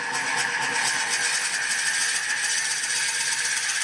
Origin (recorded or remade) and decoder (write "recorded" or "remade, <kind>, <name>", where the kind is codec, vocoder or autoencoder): recorded